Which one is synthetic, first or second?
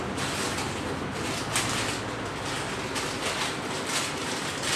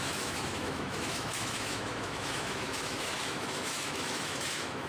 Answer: second